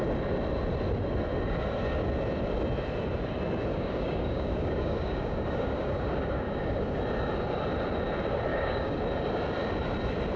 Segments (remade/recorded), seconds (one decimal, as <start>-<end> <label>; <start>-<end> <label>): 0.0-3.7 recorded; 3.7-7.0 remade; 7.0-8.5 recorded; 8.5-9.0 remade; 9.0-10.4 recorded